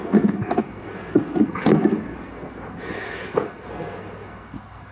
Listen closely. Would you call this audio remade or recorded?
remade